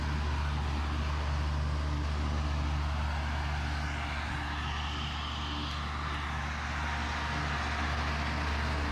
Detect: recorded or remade recorded